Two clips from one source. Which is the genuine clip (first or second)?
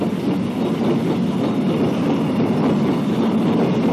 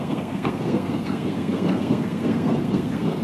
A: first